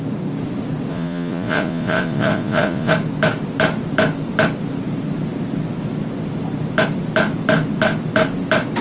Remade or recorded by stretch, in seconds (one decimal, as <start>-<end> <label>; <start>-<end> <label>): 0.0-0.9 recorded; 0.9-2.9 remade; 2.9-8.8 recorded